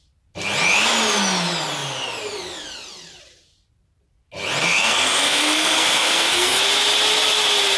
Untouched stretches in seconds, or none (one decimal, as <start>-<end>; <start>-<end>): 0.0-4.6; 6.6-7.8

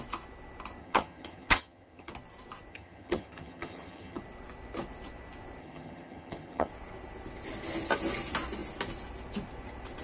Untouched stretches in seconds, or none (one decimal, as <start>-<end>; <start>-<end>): 0.0-0.8; 2.1-2.7; 4.2-5.6; 6.7-10.0

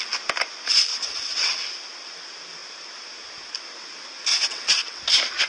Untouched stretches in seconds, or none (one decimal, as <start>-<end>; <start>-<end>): 0.0-0.9; 1.6-4.3; 5.0-5.5

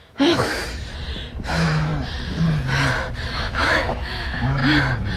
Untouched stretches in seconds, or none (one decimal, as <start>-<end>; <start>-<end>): 0.6-1.5; 1.9-3.3; 4.6-5.2

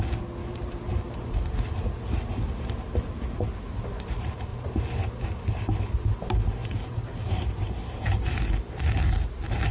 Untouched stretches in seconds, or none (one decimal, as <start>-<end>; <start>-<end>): 0.0-0.4; 1.9-4.5; 5.1-6.6; 8.7-9.7